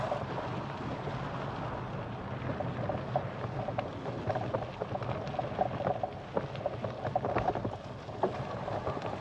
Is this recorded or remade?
recorded